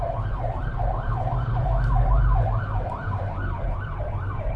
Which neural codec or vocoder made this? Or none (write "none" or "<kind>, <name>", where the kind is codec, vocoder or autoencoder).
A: vocoder, BigVGAN v2